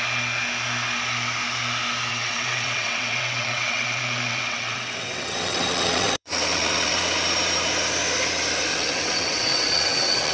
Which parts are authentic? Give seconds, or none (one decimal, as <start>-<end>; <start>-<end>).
0.0-2.1; 7.0-8.7